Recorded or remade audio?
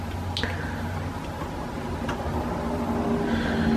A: recorded